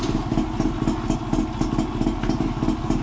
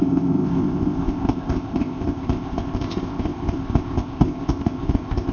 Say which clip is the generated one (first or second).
second